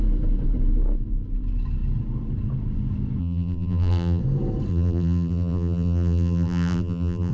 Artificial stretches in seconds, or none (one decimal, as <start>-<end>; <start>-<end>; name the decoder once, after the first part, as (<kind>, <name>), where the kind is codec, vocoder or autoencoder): 3.2-4.2 (vocoder, BigVGAN v2); 4.7-7.3